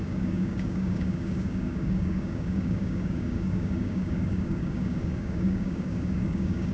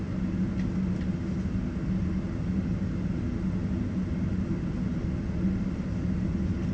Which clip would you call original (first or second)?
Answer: second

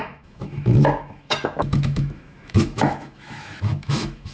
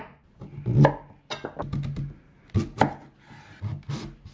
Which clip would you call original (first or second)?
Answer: second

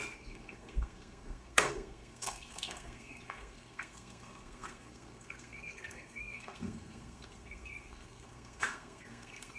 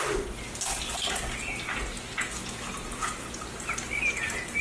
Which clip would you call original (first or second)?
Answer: second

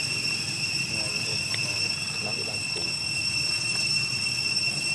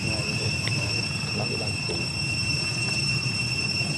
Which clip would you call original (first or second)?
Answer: first